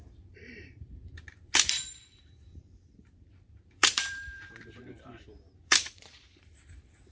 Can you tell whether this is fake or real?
fake